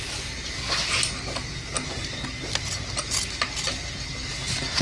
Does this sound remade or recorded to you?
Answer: recorded